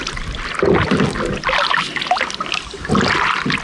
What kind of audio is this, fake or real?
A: real